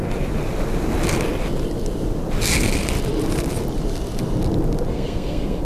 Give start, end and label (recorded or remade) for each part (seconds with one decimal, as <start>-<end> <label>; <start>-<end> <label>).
0.0-4.9 recorded; 4.9-5.6 remade